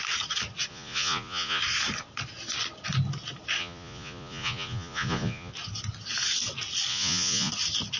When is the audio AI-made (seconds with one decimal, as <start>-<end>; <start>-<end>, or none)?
0.7-1.6; 3.6-5.5; 6.9-7.5